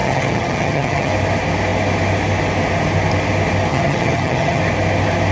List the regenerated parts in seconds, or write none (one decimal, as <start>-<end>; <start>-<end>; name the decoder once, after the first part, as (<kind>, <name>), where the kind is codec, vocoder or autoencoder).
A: 0.0-1.1 (vocoder, HiFi-GAN); 3.7-4.6